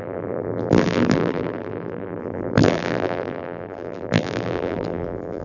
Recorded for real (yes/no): no